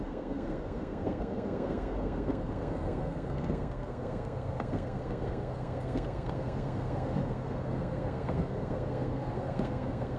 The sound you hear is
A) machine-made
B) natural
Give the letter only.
A